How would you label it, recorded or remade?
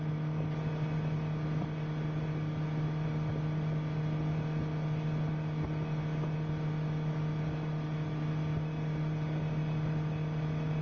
recorded